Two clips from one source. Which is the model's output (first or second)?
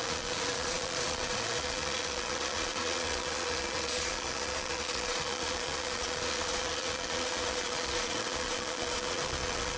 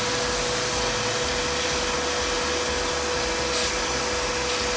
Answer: first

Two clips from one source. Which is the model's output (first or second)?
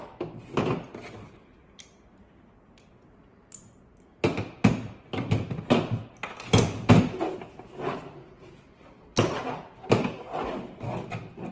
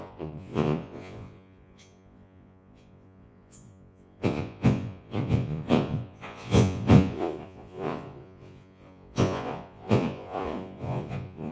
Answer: second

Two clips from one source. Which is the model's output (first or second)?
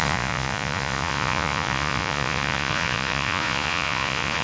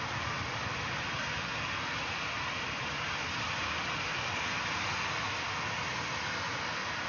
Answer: first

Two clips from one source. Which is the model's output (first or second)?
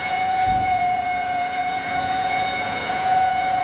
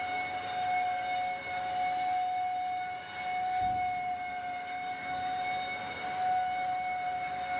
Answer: first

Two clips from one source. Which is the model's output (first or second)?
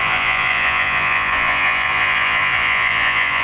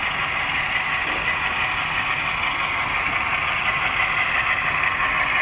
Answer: first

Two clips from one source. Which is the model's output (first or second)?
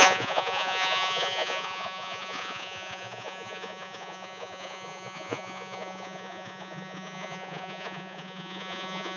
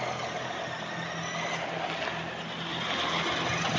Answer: first